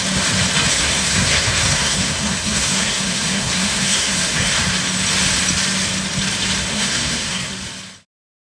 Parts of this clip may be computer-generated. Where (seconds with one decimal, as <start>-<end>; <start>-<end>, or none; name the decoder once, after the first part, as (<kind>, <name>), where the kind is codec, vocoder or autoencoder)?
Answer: 0.7-4.6 (codec, SNAC); 6.7-7.5